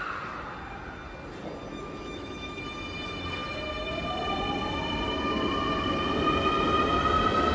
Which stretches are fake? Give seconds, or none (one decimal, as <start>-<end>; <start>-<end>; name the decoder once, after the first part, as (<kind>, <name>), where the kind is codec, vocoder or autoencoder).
1.7-2.6 (autoencoder, DAC-VAE)